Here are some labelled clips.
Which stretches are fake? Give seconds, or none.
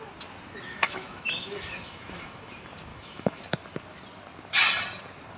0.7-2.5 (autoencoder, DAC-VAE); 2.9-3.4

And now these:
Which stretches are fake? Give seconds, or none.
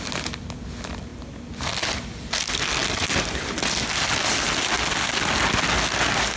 none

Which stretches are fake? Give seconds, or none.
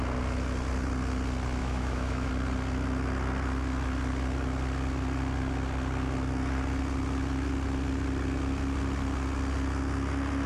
1.6-2.3 (autoencoder, DAC-VAE)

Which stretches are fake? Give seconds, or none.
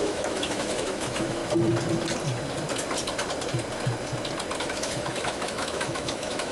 0.0-1.4 (autoencoder, DAC-VAE); 4.6-6.5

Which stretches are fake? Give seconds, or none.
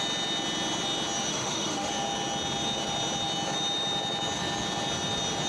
1.3-1.9 (autoencoder, DAC-VAE)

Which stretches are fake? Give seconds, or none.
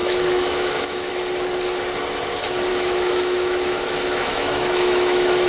0.0-1.1 (autoencoder, DAC-VAE); 2.7-5.5